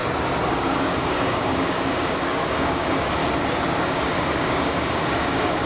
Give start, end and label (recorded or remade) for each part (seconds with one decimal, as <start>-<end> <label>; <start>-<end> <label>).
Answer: 0.0-0.5 recorded; 0.5-3.2 remade; 3.2-3.8 recorded; 3.8-5.7 remade